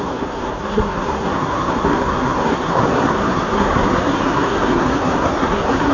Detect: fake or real fake